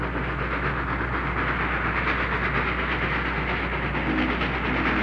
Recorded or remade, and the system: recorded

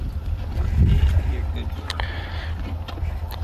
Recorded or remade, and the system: recorded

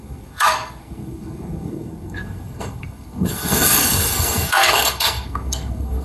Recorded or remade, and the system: remade, codec, SNAC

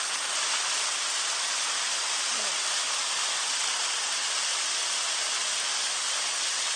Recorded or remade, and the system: recorded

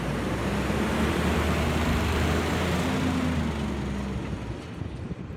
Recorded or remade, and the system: recorded